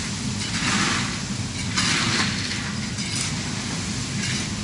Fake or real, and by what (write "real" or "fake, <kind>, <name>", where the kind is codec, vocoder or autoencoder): real